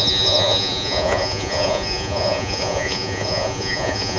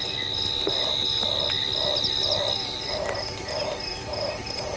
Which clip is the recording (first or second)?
second